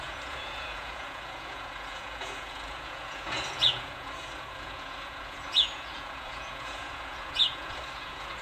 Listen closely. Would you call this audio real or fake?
fake